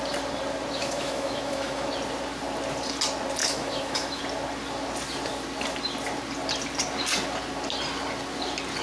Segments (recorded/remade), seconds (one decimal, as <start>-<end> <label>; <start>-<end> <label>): 0.0-0.8 recorded; 0.8-1.9 remade; 1.9-3.4 recorded; 3.4-4.2 remade; 4.2-8.8 recorded